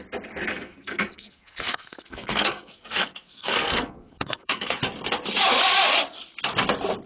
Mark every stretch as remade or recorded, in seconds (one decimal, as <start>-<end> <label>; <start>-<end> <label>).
0.0-0.5 recorded; 0.5-4.8 remade; 4.8-7.1 recorded